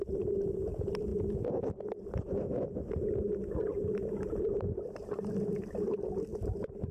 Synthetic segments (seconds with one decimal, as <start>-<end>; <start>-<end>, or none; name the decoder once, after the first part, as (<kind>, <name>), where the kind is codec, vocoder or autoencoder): 3.7-5.3 (vocoder, BigVGAN v2); 6.3-6.9